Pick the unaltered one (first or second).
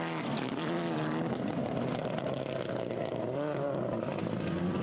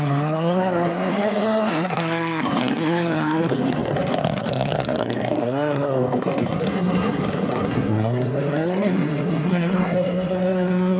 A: first